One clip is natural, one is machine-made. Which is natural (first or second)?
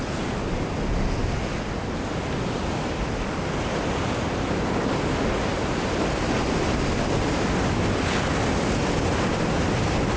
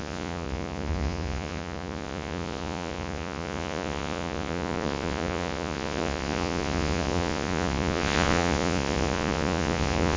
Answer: first